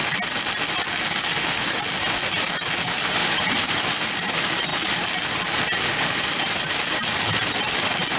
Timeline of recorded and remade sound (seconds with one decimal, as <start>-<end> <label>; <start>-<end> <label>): 0.0-3.2 recorded; 3.2-3.8 remade; 3.8-8.2 recorded